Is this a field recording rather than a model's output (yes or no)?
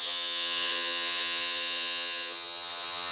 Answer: no